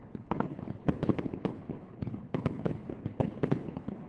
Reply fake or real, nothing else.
fake